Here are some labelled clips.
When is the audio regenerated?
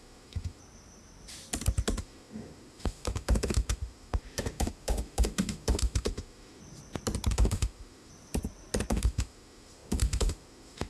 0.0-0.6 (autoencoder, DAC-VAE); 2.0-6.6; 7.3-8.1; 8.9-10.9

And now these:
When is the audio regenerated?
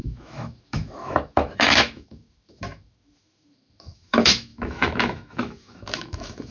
0.0-6.5 (autoencoder, DAC-VAE)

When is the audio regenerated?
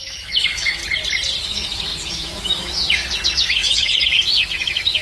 0.0-0.8 (autoencoder, DAC-VAE); 1.4-5.0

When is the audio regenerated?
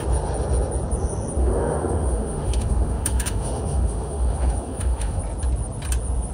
1.4-5.2 (autoencoder, DAC-VAE)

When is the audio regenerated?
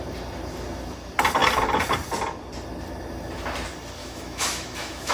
4.0-5.1 (autoencoder, DAC-VAE)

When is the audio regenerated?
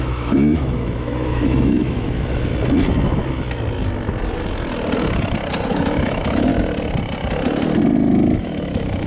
0.0-2.5 (autoencoder, DAC-VAE); 5.7-6.5; 8.4-9.1